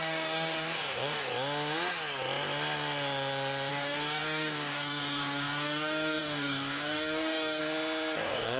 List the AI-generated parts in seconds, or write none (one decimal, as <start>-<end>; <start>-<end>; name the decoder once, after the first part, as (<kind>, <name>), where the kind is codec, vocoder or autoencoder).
0.0-1.3 (codec, DAC); 3.7-7.6; 8.2-8.6